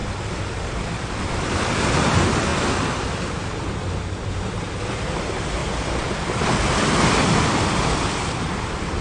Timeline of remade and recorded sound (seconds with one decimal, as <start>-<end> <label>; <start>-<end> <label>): 0.0-0.8 recorded; 0.8-2.5 remade; 2.5-4.8 recorded; 4.8-9.0 remade